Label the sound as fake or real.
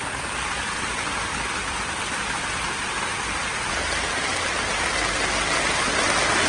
real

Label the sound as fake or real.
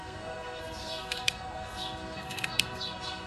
fake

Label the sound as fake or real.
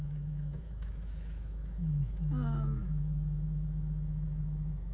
fake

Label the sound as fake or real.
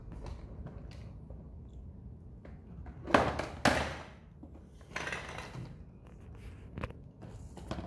real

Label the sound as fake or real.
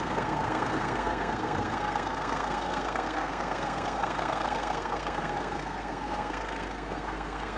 fake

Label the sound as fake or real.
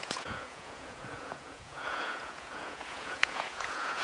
fake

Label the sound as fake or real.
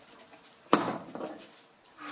real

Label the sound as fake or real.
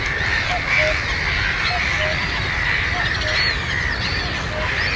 real